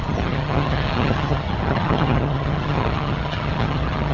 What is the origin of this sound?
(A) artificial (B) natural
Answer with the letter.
A